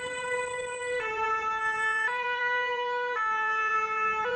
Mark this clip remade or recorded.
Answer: remade